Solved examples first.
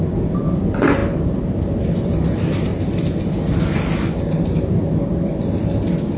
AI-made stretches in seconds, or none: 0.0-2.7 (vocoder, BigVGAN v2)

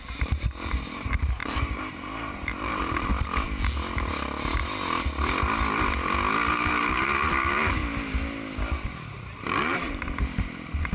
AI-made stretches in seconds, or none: 0.0-3.1 (vocoder, BigVGAN v2); 6.5-7.8; 9.1-10.9

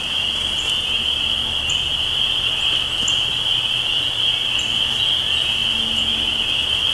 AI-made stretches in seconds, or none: 5.6-6.3 (vocoder, BigVGAN v2)

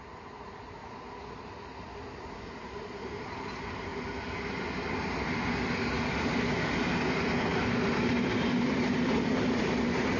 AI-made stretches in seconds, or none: 0.0-0.8 (vocoder, BigVGAN v2); 2.4-3.9; 7.6-10.2

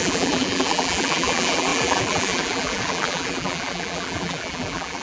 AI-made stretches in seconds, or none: 0.0-5.0 (vocoder, BigVGAN v2)